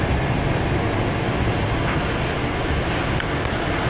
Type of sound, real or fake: real